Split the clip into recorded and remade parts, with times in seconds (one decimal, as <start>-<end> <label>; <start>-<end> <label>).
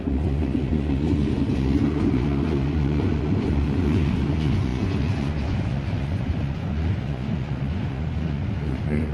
0.0-9.1 remade